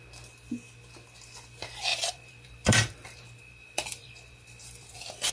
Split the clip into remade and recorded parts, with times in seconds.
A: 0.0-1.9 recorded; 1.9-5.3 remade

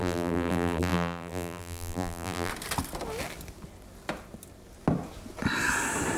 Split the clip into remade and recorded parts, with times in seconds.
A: 0.0-2.5 remade; 2.5-6.2 recorded